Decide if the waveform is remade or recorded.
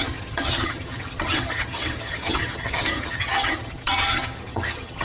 remade